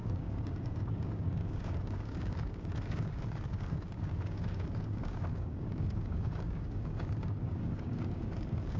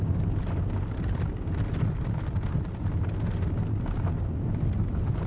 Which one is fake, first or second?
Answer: first